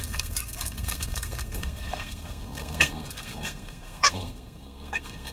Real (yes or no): no